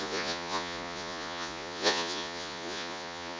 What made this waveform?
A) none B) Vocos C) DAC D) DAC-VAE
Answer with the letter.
B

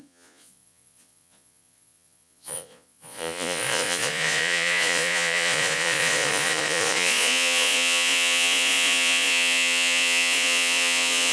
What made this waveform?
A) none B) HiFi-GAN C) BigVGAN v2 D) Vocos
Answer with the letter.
D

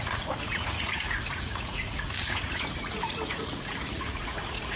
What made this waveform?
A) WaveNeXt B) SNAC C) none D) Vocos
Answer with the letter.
D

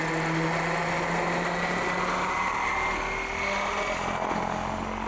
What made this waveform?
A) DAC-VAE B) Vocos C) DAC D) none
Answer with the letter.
D